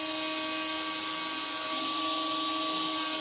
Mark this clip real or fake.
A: real